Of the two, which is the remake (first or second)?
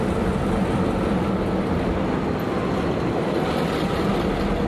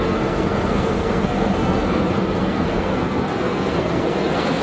second